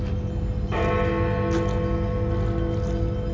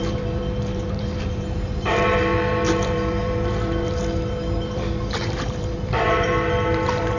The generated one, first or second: second